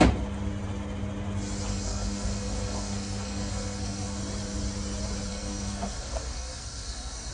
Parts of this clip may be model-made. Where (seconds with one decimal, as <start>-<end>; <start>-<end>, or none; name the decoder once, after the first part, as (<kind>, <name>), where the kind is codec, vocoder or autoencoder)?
1.7-4.2 (codec, SNAC); 5.3-7.3